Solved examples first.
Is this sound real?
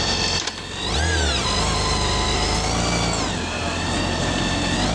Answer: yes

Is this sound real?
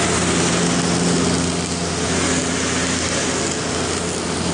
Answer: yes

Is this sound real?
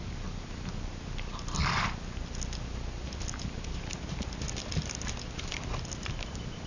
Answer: yes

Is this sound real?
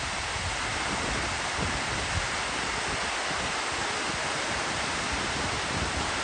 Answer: yes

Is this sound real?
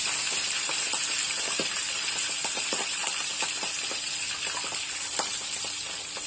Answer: yes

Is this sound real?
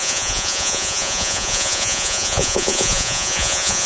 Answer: no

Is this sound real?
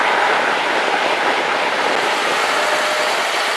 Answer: yes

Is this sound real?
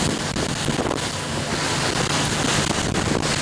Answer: yes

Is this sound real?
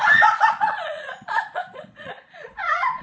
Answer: no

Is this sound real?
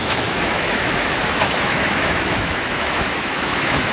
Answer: no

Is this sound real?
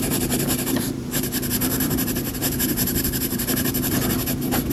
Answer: no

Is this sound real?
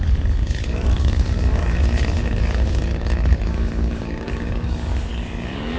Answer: no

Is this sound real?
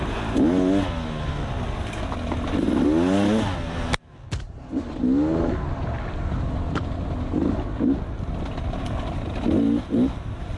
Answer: yes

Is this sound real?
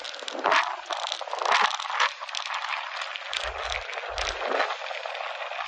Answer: yes